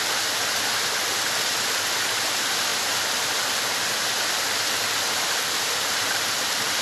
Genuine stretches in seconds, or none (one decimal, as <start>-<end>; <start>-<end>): 0.0-6.8